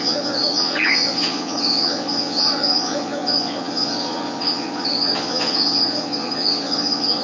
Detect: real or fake fake